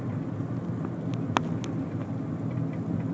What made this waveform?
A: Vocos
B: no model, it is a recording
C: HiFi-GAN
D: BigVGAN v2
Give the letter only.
B